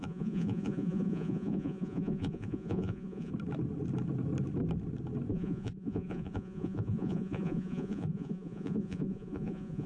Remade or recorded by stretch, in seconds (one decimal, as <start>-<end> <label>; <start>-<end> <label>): 0.0-3.3 remade; 3.3-5.3 recorded; 5.3-9.9 remade